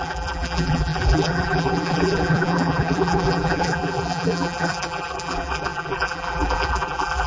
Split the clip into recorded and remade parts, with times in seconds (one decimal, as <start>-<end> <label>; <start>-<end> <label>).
0.0-7.3 remade